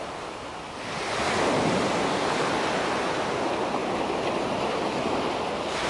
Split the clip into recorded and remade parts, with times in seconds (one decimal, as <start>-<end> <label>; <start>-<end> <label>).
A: 0.0-5.9 recorded